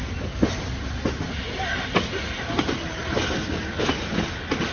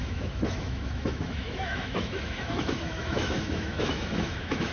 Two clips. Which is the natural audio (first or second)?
first